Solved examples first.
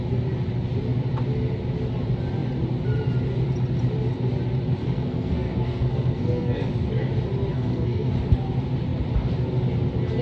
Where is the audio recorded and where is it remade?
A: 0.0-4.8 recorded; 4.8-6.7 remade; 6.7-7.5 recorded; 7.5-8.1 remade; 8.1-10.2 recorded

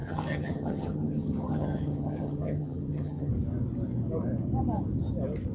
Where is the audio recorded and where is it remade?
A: 0.0-3.3 remade; 3.3-5.5 recorded

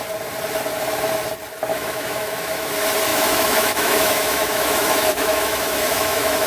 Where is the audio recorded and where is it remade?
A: 0.0-1.7 recorded; 1.7-2.7 remade; 2.7-3.1 recorded; 3.1-6.5 remade

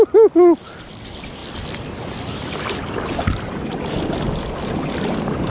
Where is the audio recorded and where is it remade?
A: 0.0-5.5 recorded